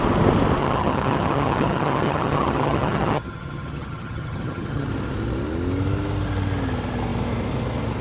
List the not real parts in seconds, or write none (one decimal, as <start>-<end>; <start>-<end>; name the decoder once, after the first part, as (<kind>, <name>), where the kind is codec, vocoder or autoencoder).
0.6-4.9 (vocoder, HiFi-GAN)